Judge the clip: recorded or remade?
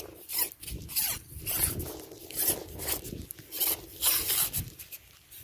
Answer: remade